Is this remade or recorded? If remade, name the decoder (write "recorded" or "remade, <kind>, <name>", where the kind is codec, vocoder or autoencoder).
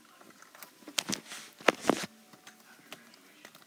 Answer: recorded